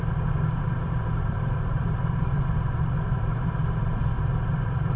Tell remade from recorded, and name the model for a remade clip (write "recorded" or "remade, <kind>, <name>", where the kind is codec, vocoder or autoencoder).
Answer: remade, vocoder, BigVGAN v2